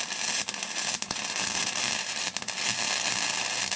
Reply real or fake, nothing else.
real